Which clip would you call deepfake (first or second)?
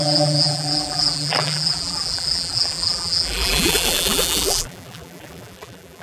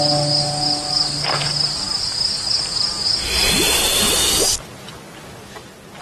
first